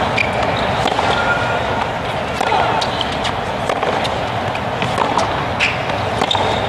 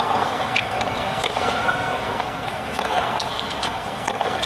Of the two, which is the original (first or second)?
first